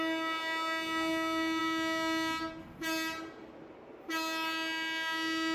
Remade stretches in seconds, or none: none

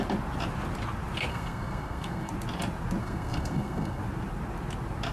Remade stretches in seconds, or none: 1.3-2.3 (codec, SNAC); 3.0-4.0